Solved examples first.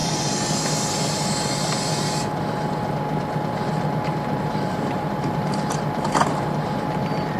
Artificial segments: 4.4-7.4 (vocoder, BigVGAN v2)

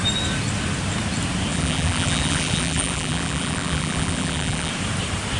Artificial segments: 1.5-4.7 (vocoder, BigVGAN v2)

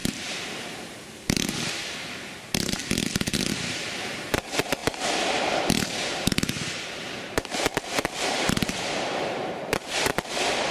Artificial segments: 0.0-2.8 (vocoder, BigVGAN v2); 3.5-10.7

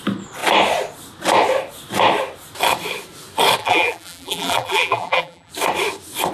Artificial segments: 3.6-5.5 (vocoder, BigVGAN v2)

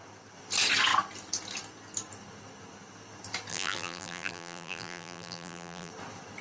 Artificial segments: 3.5-5.9 (vocoder, BigVGAN v2)

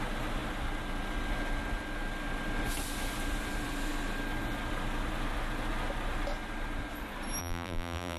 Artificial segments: 7.4-8.2 (vocoder, BigVGAN v2)

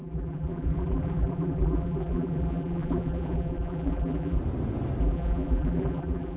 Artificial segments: 0.0-4.4 (vocoder, BigVGAN v2); 5.0-6.4

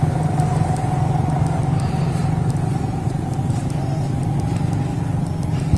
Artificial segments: 2.2-4.2 (vocoder, BigVGAN v2)